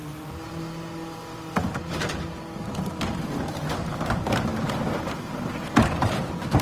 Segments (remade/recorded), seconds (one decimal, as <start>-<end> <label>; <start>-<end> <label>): 0.0-6.6 remade